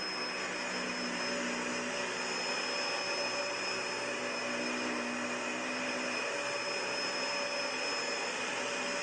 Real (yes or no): yes